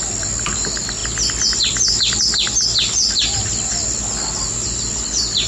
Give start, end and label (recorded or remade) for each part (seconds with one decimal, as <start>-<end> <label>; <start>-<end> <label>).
0.0-5.5 recorded